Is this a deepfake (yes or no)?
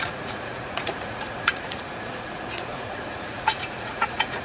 yes